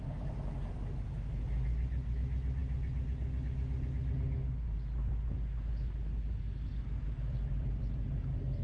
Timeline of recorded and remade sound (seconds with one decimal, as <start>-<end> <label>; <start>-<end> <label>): 0.0-8.6 recorded